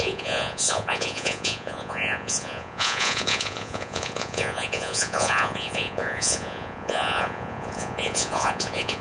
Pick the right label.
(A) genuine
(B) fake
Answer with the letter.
B